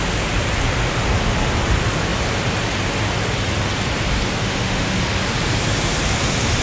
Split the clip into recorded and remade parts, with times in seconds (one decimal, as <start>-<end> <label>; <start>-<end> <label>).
0.0-4.4 recorded; 4.4-5.0 remade; 5.0-6.6 recorded